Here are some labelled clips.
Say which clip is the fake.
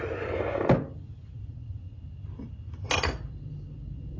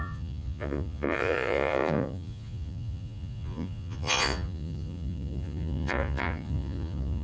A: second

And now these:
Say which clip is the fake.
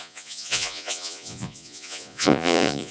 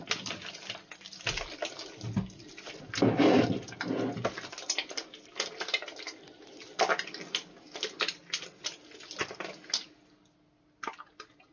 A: first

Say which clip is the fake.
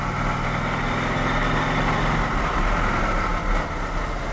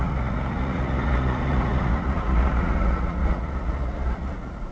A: second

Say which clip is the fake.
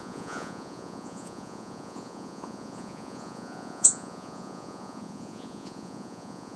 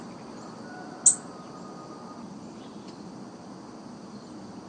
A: first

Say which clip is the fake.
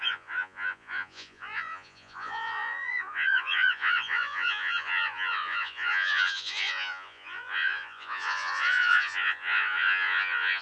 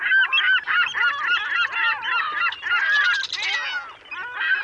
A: first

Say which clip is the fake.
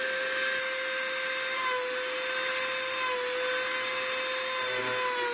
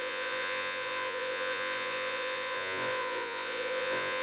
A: second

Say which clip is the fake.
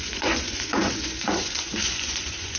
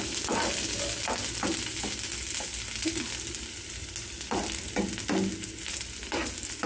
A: first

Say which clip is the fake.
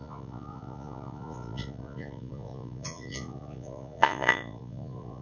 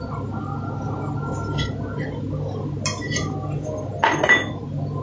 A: first